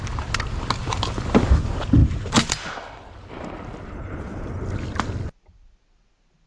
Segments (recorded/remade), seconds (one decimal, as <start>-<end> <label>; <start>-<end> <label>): 0.0-6.5 recorded

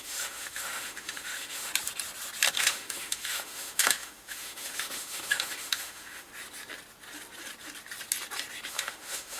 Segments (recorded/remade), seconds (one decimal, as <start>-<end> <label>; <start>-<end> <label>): 0.0-1.7 remade; 1.7-2.5 recorded; 2.5-6.3 remade; 6.3-8.7 recorded; 8.7-9.4 remade

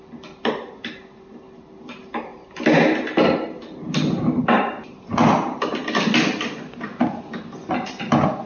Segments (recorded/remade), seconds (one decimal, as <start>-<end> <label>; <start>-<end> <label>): 0.0-8.5 recorded